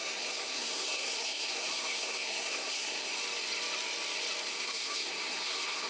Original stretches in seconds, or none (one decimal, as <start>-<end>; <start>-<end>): 3.1-4.5